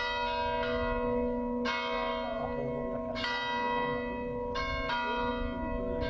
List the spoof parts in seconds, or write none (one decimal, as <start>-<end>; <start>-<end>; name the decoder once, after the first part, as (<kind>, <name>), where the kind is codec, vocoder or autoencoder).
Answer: none